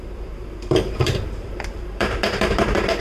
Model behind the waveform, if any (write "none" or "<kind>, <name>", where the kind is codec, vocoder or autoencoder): vocoder, BigVGAN v2